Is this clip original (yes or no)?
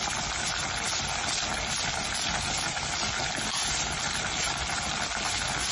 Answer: yes